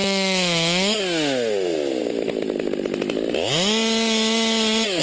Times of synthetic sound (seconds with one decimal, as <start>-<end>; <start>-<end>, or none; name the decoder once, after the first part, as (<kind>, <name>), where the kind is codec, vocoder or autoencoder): 0.0-1.0 (autoencoder, DAC-VAE)